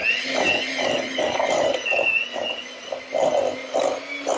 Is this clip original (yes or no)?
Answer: yes